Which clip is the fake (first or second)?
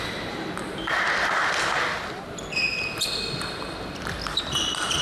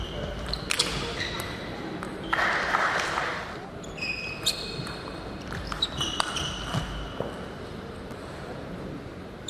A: second